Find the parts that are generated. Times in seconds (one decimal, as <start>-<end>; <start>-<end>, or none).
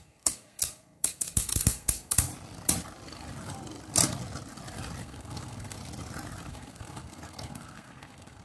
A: 0.0-2.3; 5.0-5.8; 6.5-8.4